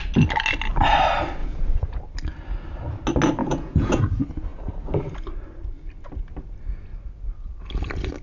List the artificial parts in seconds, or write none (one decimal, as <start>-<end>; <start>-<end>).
1.4-2.0; 3.4-4.0